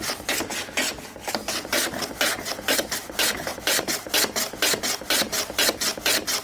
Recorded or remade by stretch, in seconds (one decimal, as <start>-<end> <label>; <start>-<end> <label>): 0.0-3.5 recorded; 3.5-4.1 remade; 4.1-6.4 recorded

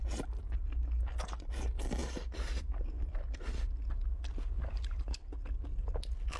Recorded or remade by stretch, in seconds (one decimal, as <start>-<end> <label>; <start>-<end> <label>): 0.0-2.0 recorded; 2.0-3.7 remade; 3.7-6.4 recorded